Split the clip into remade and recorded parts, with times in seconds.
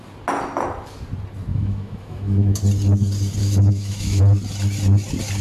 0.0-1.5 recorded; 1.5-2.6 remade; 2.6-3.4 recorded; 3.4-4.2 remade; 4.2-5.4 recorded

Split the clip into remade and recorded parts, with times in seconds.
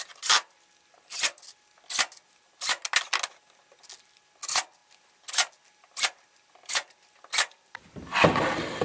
0.0-8.8 recorded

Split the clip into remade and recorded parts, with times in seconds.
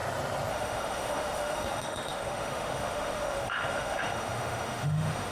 0.0-0.5 recorded; 0.5-5.3 remade